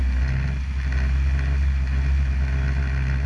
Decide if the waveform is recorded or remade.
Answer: recorded